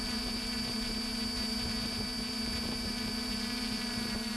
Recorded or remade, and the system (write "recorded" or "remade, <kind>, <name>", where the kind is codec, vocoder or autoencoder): remade, vocoder, BigVGAN v2